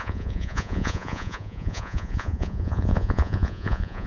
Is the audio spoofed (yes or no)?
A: yes